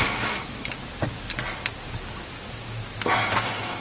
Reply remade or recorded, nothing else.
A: recorded